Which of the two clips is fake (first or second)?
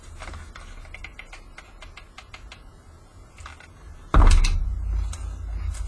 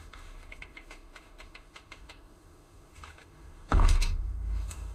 second